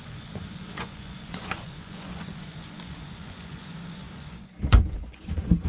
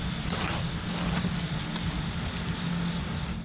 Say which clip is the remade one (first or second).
first